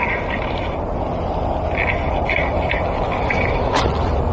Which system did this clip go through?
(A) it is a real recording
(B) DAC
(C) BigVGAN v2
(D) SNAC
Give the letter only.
A